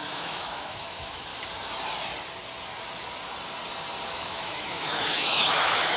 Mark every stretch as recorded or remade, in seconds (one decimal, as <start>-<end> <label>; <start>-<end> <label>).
0.0-1.3 remade; 1.3-4.1 recorded; 4.1-6.0 remade